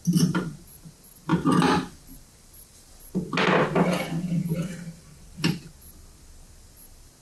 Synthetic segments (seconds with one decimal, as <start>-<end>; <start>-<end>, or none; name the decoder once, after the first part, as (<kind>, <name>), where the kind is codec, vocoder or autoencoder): 1.3-2.9 (vocoder, BigVGAN v2); 4.4-5.6